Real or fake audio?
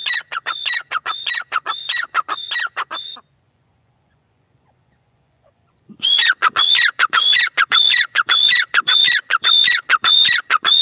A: fake